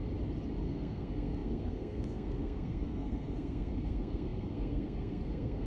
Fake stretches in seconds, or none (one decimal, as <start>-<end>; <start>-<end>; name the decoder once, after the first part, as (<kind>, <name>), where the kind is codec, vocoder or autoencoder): 0.6-5.7 (codec, SNAC)